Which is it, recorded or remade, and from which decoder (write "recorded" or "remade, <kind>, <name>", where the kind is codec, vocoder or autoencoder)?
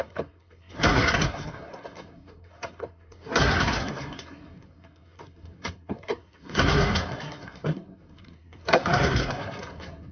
remade, codec, SNAC